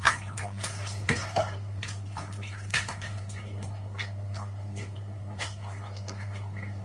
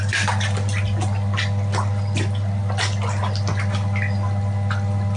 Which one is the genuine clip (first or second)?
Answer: second